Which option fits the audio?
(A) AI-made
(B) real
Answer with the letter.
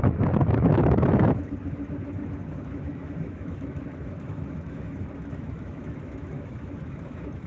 A